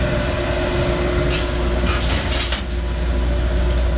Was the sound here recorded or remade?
recorded